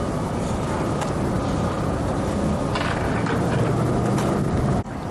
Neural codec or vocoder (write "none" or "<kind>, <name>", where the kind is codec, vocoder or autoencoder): none